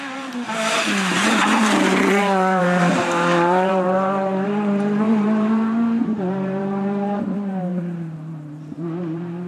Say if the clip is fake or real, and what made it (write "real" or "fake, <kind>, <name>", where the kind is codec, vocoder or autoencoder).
fake, vocoder, BigVGAN v2